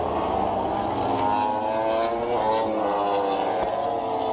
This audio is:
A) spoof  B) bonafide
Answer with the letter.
B